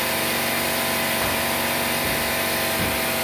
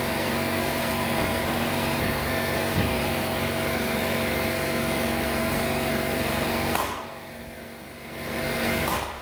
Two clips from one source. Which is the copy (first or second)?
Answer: second